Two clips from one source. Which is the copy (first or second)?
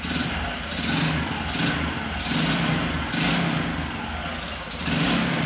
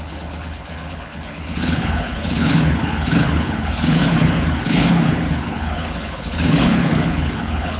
second